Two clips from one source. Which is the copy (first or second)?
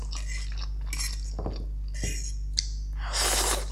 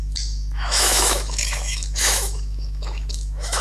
second